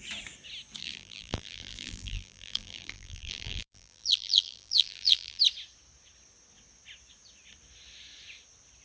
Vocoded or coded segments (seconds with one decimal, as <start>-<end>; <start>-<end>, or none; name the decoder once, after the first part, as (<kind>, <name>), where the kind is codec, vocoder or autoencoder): 0.8-5.4 (vocoder, BigVGAN v2)